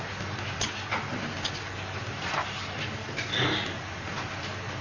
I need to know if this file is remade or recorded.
recorded